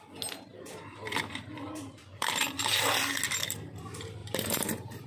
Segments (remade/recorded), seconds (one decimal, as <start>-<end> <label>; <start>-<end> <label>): 0.0-0.5 recorded; 0.5-2.9 remade; 2.9-4.2 recorded; 4.2-5.1 remade